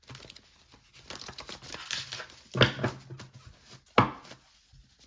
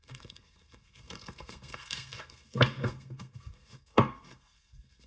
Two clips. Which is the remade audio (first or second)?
second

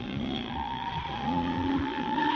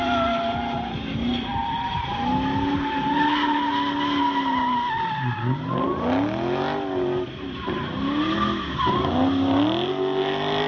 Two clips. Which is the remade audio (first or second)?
first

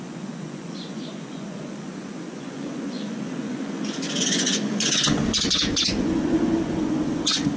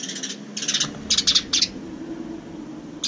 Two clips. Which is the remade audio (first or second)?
first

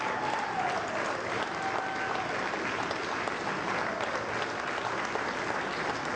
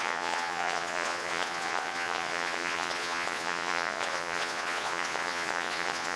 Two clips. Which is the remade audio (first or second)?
second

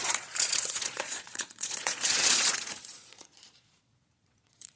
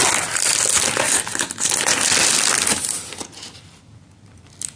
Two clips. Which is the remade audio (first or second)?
first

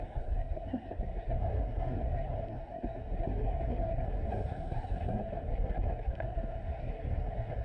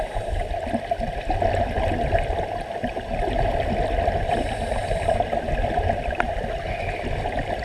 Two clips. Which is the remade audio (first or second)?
first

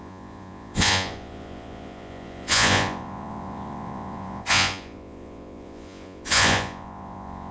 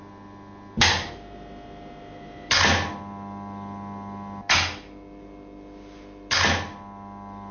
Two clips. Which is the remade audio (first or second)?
first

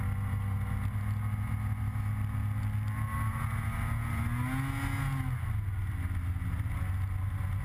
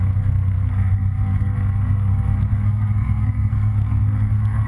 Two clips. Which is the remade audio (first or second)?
second